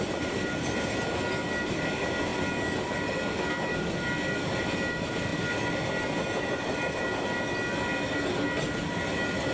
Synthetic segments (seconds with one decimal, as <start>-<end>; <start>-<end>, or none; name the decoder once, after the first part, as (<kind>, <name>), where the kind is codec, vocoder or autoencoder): none